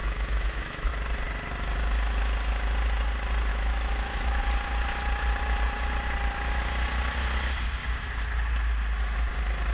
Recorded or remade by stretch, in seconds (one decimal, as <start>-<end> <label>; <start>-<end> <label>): 0.0-0.9 remade; 0.9-3.5 recorded; 3.5-4.4 remade; 4.4-9.7 recorded